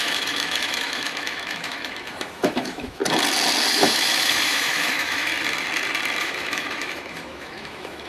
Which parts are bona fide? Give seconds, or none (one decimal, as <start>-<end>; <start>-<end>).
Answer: 3.0-3.7; 5.3-6.2